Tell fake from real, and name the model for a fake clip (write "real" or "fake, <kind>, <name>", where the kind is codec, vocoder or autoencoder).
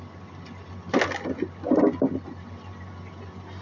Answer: real